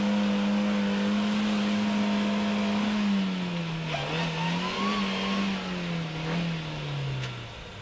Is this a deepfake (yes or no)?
no